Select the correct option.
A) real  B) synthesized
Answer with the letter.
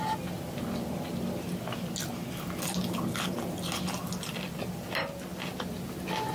A